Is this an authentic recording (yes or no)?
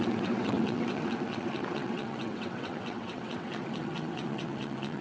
no